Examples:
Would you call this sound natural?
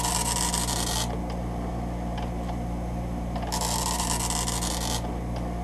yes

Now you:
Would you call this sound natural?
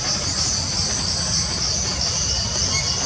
yes